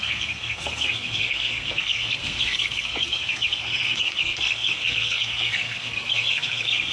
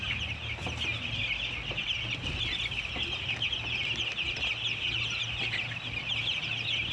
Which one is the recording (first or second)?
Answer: second